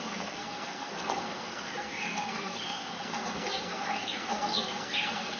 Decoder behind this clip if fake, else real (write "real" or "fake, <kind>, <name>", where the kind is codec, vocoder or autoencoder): fake, codec, SNAC